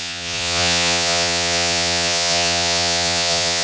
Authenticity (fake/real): fake